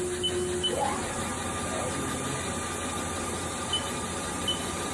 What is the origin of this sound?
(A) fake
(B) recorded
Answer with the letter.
B